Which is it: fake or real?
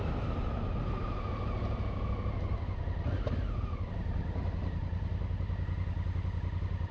real